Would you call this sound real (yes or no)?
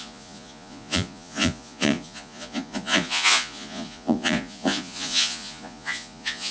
no